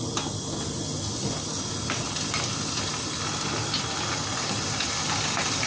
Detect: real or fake real